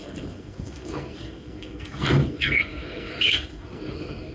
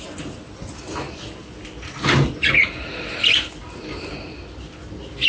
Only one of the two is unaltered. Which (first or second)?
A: second